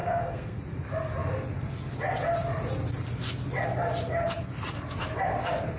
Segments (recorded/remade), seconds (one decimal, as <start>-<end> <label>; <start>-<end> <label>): 0.0-0.6 remade; 0.6-5.8 recorded